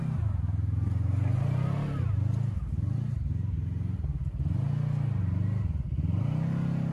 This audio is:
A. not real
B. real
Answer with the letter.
B